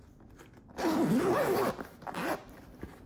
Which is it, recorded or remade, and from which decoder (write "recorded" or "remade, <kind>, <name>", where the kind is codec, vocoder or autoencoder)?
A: recorded